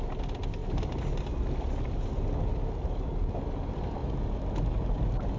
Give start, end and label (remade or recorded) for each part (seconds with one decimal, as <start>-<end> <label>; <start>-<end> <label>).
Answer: 0.0-5.4 recorded